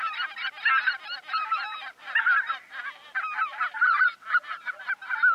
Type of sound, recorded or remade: recorded